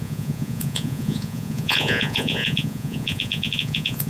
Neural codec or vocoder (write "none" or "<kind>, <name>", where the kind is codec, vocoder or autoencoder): vocoder, Vocos